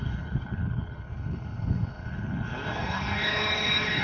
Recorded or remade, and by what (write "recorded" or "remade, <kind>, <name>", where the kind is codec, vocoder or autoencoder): remade, codec, HILCodec